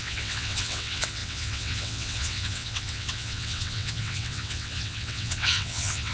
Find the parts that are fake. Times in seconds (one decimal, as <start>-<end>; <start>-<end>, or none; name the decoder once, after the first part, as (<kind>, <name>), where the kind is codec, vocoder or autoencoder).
0.0-6.1 (vocoder, WaveNeXt)